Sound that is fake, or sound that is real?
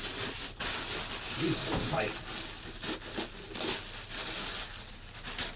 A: real